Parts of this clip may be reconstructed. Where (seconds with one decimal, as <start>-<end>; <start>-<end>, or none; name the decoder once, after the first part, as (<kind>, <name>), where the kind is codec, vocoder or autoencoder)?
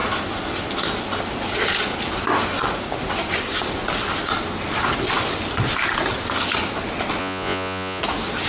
7.2-8.0 (vocoder, Vocos)